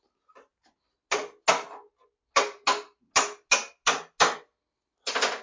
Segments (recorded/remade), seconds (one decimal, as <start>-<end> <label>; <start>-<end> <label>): 0.0-5.4 recorded